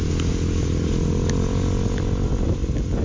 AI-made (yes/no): no